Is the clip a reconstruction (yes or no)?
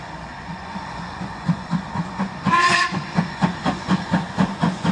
yes